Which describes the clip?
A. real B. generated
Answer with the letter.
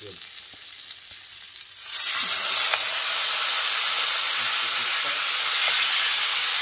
A